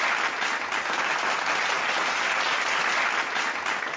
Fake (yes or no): no